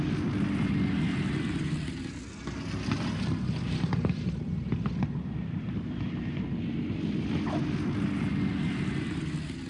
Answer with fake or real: real